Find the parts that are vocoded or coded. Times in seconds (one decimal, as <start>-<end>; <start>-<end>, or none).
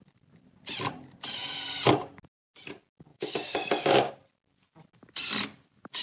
3.1-4.1